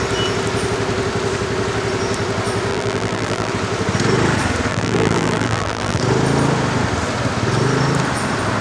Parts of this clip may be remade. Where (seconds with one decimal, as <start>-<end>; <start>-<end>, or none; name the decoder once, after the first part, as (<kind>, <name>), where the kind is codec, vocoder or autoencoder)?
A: 2.7-3.5 (vocoder, BigVGAN v2); 4.7-6.0